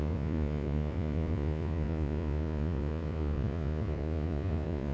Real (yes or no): no